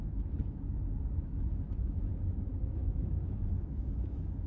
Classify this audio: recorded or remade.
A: remade